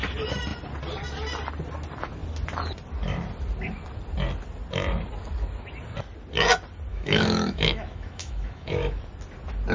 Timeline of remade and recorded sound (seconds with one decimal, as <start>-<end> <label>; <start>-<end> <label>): 0.0-6.9 recorded; 6.9-9.0 remade; 9.0-9.7 recorded